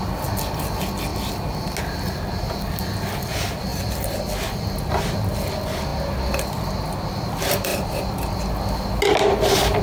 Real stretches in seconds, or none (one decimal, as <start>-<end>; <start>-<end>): 0.0-7.7; 8.4-9.8